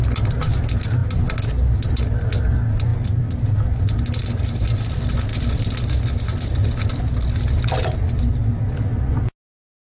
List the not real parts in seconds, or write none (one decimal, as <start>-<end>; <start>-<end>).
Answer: none